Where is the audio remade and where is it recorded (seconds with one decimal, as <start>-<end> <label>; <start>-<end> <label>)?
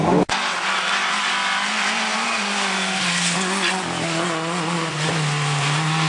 0.0-6.1 recorded